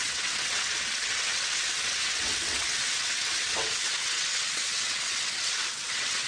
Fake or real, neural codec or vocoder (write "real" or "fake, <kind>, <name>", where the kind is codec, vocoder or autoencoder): fake, vocoder, WaveNeXt